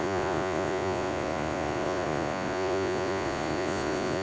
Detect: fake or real fake